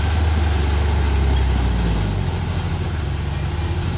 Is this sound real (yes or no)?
yes